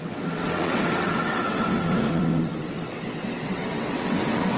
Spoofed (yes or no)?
yes